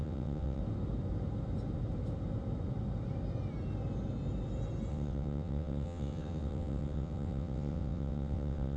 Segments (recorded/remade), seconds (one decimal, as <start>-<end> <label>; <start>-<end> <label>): 0.0-0.6 remade; 0.6-4.9 recorded; 4.9-8.8 remade